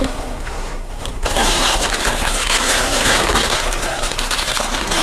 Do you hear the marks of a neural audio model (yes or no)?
yes